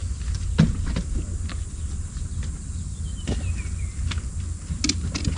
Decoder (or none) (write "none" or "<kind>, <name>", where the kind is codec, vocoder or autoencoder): none